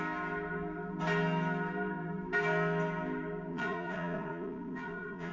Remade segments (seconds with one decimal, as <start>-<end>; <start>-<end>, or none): 3.5-5.3